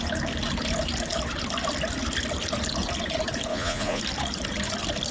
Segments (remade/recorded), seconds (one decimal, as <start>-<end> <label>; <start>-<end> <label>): 0.0-3.5 recorded; 3.5-4.0 remade; 4.0-5.1 recorded